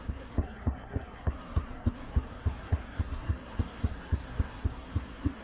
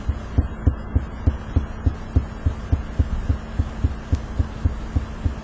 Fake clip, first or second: first